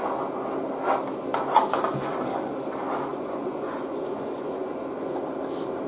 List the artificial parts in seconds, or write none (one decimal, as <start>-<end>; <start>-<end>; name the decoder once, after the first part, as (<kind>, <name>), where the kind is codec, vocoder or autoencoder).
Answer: 3.1-4.8 (vocoder, Vocos)